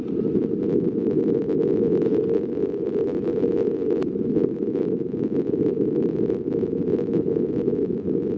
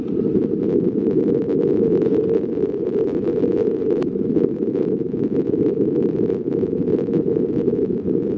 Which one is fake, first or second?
second